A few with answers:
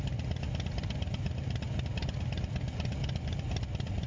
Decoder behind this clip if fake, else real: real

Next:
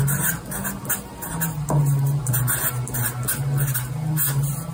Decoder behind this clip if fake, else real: real